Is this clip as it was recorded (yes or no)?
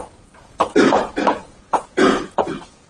no